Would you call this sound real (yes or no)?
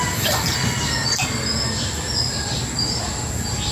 yes